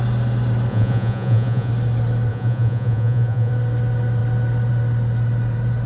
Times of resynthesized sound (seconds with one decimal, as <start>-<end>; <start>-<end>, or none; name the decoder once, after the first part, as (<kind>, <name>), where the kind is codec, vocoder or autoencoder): 0.7-1.7 (vocoder, Vocos); 2.3-3.5